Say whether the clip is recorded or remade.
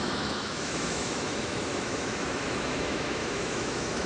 remade